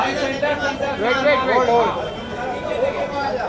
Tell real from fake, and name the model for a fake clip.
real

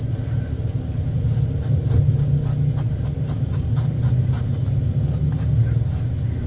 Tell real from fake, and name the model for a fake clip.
real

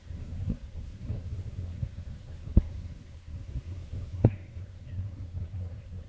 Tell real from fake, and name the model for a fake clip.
fake, codec, SNAC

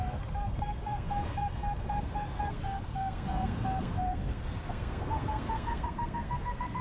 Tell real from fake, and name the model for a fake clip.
fake, codec, SNAC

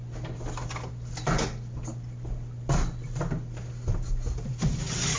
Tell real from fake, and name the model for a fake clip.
real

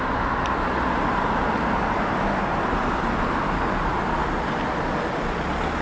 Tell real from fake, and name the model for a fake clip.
real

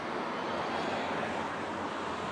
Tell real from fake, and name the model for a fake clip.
real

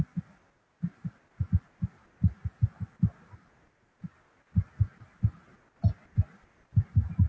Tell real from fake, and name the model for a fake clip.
real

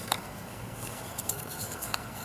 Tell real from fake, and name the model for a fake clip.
fake, codec, SNAC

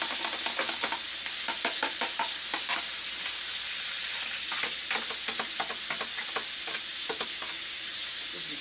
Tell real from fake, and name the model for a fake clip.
real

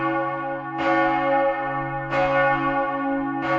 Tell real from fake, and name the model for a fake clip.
real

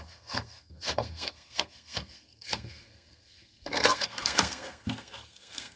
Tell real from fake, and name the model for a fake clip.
fake, codec, SNAC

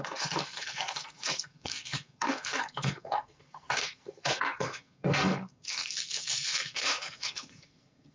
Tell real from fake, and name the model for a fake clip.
fake, codec, SNAC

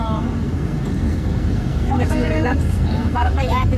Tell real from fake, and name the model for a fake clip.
fake, codec, SNAC